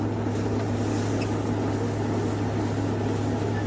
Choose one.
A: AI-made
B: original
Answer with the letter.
B